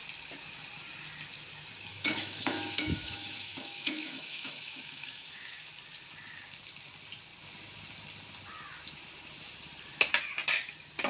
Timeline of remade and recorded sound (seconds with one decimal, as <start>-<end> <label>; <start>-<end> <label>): 0.0-1.9 recorded; 1.9-5.7 remade; 5.7-11.1 recorded